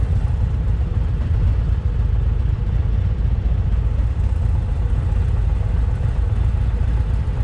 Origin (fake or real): fake